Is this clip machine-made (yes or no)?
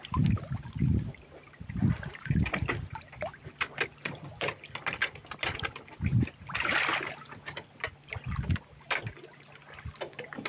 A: no